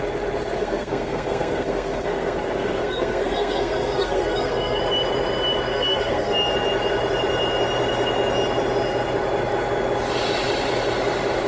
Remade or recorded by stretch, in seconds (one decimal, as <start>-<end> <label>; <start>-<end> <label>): 0.0-0.6 recorded; 0.6-4.8 remade; 4.8-5.7 recorded; 5.7-6.5 remade; 6.5-11.5 recorded